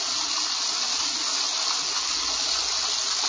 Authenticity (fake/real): real